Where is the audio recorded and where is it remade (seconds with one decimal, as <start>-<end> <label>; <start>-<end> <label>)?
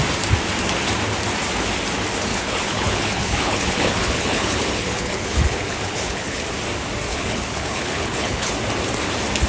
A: 0.0-2.3 recorded; 2.3-6.4 remade; 6.4-7.1 recorded; 7.1-8.5 remade; 8.5-9.5 recorded